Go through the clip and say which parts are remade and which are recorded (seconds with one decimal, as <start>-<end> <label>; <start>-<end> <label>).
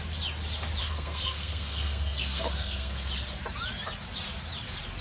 0.0-0.8 recorded; 0.8-3.1 remade; 3.1-5.0 recorded